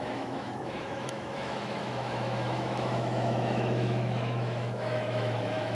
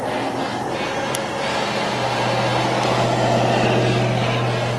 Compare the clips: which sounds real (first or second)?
second